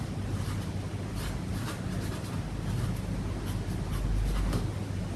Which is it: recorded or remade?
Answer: recorded